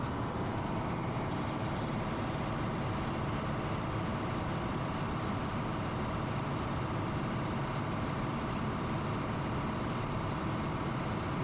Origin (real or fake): real